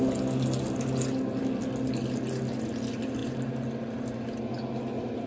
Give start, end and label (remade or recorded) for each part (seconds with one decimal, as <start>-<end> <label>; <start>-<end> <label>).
0.0-5.3 recorded